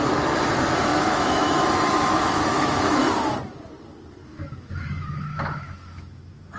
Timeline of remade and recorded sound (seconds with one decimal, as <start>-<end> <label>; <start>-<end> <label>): 0.0-0.9 recorded; 0.9-3.1 remade; 3.1-4.3 recorded; 4.3-6.6 remade